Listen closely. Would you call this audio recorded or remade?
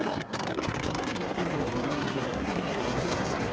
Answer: remade